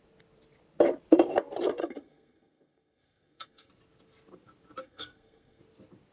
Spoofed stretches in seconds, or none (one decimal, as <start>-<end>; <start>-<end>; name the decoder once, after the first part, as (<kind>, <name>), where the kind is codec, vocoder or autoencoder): 1.8-3.7 (codec, SNAC); 4.8-5.6